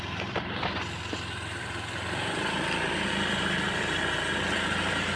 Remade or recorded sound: remade